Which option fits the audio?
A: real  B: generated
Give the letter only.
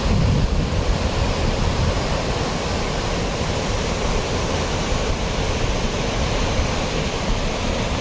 A